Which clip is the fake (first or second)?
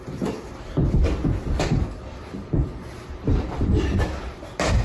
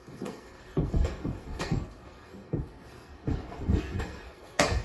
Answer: second